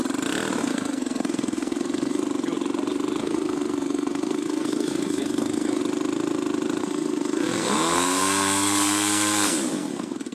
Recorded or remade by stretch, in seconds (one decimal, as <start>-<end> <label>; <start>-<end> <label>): 0.0-0.6 recorded; 0.6-2.2 remade; 2.2-3.2 recorded; 3.2-5.8 remade; 5.8-6.8 recorded; 6.8-10.3 remade